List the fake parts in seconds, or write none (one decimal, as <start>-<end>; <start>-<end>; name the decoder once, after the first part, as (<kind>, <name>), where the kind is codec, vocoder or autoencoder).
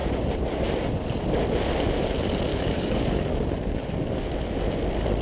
2.5-4.2 (codec, DAC)